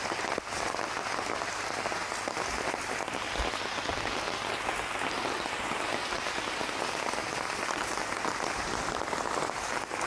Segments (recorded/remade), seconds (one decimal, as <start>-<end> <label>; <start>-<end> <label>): 0.0-10.1 recorded